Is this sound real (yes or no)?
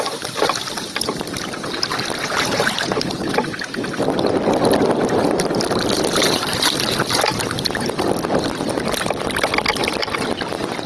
yes